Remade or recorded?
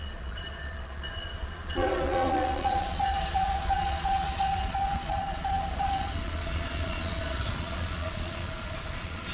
remade